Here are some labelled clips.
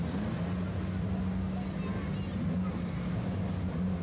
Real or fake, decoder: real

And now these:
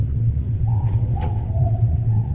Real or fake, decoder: fake, vocoder, WaveNeXt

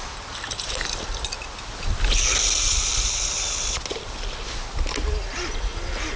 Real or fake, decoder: real